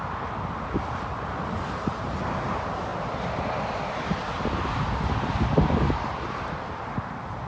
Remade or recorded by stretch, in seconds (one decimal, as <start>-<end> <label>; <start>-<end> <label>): 0.0-7.5 recorded